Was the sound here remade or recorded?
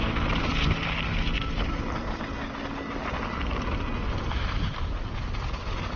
recorded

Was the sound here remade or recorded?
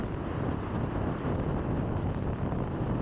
recorded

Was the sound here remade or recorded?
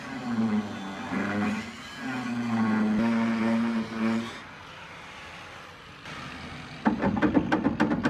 recorded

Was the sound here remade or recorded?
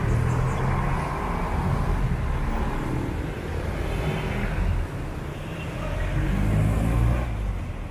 recorded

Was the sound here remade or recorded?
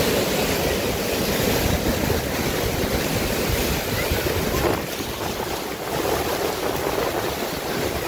recorded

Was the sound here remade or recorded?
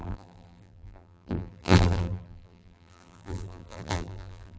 remade